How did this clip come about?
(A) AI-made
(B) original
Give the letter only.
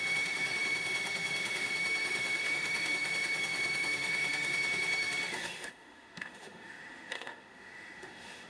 A